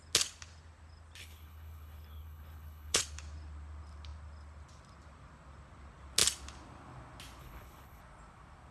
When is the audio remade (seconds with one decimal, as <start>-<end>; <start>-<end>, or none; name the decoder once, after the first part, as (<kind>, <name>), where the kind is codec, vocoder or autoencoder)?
1.2-3.0 (codec, HILCodec); 7.4-8.0